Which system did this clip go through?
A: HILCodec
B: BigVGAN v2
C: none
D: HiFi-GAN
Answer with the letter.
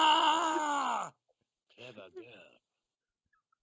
C